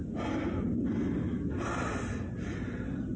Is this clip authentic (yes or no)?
yes